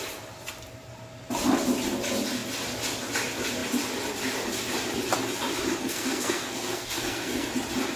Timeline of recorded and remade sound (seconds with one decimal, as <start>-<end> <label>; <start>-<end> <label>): 0.0-5.8 recorded; 5.8-7.5 remade; 7.5-8.0 recorded